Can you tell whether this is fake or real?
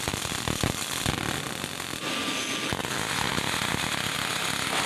real